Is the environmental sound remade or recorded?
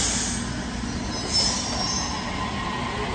recorded